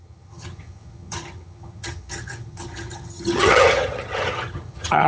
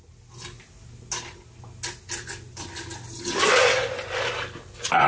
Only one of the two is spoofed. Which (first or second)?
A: first